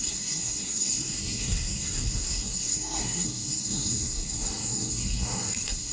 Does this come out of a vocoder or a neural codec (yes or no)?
yes